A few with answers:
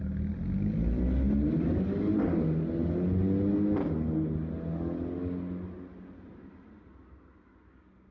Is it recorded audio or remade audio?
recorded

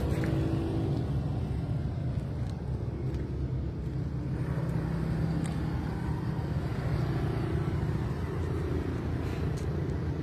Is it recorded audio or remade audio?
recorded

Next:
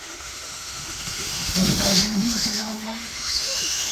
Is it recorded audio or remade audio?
remade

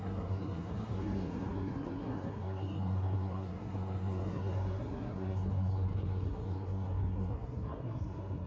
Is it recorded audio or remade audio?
remade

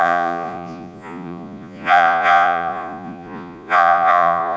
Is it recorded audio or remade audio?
remade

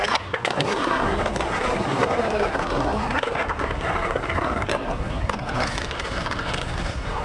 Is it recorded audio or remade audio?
remade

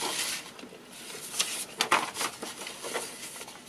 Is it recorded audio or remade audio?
recorded